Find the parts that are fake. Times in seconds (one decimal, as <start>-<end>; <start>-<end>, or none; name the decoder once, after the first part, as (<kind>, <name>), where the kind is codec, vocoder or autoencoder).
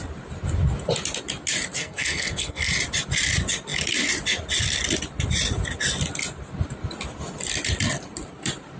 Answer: 1.8-2.7 (codec, SNAC)